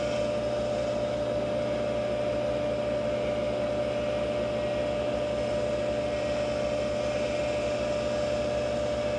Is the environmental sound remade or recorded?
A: recorded